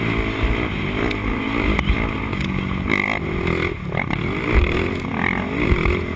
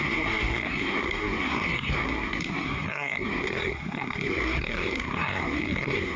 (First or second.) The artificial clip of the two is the second